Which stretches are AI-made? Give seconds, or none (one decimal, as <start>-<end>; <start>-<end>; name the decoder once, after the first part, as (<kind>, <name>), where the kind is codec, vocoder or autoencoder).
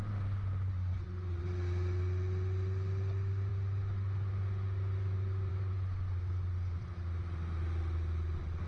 none